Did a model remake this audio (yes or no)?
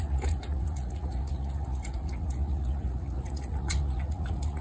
yes